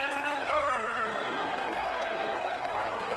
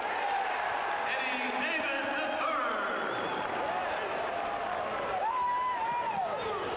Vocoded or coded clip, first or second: first